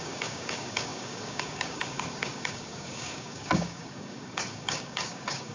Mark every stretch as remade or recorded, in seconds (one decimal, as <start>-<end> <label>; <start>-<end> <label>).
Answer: 0.0-5.5 remade